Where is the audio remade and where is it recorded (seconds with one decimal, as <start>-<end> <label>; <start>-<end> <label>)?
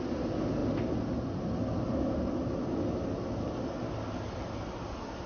0.0-5.3 recorded